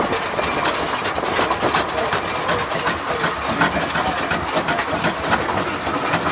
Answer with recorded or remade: recorded